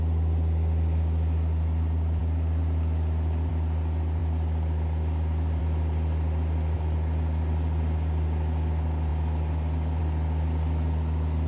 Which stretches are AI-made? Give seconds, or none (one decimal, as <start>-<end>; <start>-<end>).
none